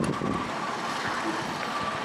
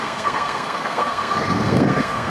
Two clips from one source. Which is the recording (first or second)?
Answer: first